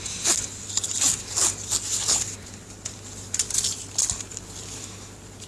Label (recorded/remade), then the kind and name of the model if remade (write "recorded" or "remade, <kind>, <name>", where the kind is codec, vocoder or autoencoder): recorded